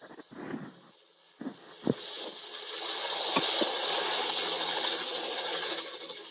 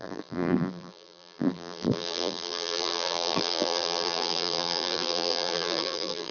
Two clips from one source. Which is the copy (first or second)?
second